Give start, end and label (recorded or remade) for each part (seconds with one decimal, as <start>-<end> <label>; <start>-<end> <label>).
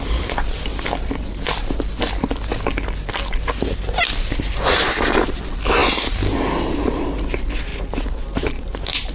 0.0-7.7 recorded; 7.7-9.1 remade